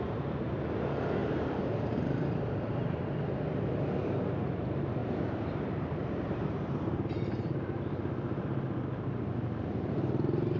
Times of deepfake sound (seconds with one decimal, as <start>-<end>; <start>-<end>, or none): 1.2-3.0; 5.0-7.8